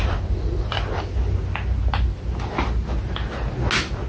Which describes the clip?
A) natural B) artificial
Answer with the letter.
A